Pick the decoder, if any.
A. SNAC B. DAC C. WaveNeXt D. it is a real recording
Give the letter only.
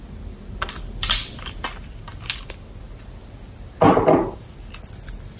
D